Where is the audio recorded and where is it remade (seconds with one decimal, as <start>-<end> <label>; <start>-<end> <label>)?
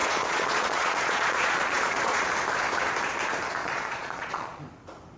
0.0-2.3 remade; 2.3-3.6 recorded; 3.6-4.6 remade; 4.6-5.2 recorded